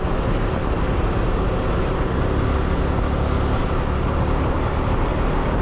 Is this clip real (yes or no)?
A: yes